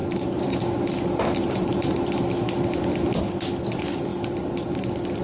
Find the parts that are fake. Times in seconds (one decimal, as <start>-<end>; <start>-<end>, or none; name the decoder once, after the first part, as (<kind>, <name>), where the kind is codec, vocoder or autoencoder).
0.0-0.6 (vocoder, BigVGAN v2); 1.4-2.1